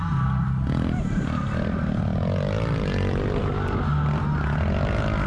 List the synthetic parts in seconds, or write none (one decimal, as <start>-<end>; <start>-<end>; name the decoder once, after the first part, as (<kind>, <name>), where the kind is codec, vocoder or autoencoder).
none